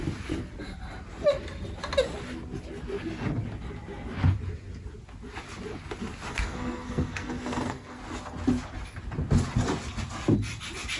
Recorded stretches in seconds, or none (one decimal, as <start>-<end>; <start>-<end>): 0.0-6.3; 8.0-11.0